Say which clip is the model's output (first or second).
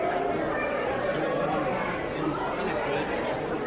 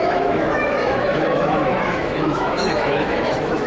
second